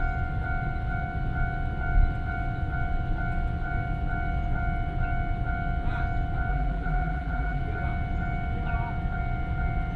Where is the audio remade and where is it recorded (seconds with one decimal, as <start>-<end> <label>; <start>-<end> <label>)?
0.0-6.5 recorded; 6.5-7.6 remade; 7.6-10.0 recorded